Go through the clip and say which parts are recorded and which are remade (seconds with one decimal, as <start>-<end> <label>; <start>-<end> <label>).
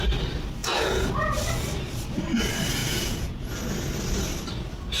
0.0-0.6 recorded; 0.6-1.1 remade; 1.1-2.8 recorded; 2.8-3.5 remade; 3.5-5.0 recorded